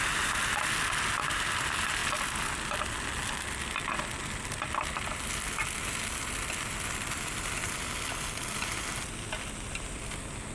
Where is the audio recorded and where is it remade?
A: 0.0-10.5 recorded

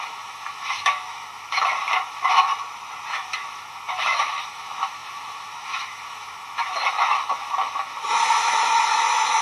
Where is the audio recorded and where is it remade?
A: 0.0-2.5 remade; 2.5-3.1 recorded; 3.1-9.4 remade

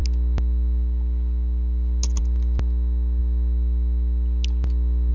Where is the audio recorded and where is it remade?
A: 0.0-5.1 recorded